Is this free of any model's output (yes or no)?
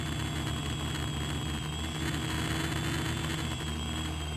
yes